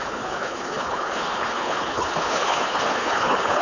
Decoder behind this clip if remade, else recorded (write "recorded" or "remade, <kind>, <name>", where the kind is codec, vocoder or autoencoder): remade, codec, HILCodec